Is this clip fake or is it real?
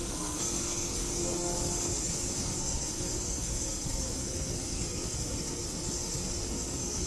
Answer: fake